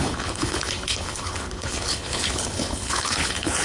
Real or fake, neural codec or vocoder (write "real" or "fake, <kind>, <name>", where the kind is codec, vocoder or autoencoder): fake, codec, HILCodec